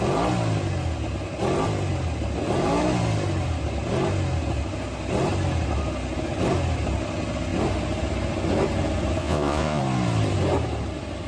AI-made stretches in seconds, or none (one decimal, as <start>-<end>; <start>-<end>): 9.2-9.8